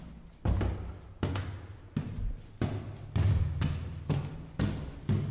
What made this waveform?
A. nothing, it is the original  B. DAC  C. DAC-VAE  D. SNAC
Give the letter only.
A